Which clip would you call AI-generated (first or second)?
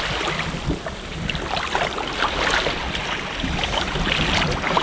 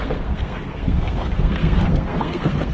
second